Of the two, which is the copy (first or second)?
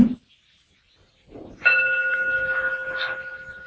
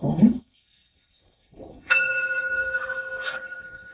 second